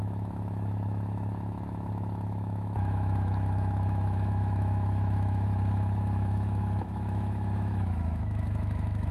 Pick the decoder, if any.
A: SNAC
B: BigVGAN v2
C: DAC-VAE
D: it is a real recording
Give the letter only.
C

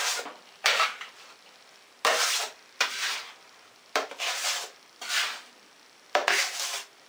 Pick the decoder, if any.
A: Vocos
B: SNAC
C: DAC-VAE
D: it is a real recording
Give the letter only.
D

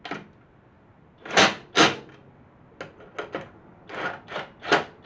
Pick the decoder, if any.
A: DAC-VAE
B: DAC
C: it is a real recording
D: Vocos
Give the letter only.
C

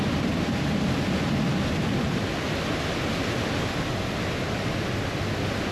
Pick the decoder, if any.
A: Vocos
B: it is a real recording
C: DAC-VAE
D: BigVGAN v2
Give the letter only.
B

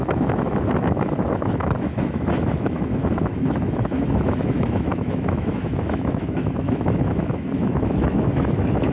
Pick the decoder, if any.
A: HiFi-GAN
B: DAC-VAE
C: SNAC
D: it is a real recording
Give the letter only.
B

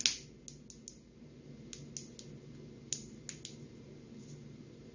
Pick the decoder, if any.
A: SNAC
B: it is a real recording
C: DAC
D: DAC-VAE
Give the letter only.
B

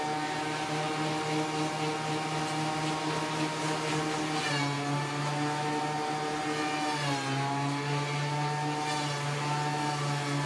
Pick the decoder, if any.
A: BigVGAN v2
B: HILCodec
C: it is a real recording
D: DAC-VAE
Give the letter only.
C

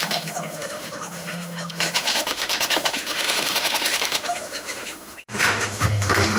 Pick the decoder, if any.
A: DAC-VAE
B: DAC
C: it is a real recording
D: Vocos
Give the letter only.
A